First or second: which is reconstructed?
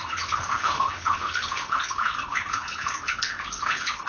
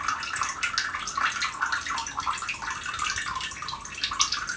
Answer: first